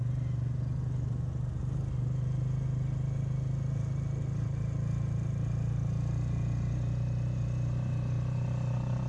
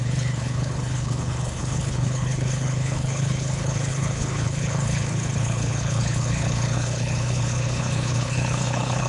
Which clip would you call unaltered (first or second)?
first